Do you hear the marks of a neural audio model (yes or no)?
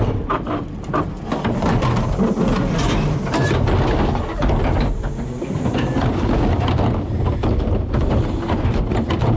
no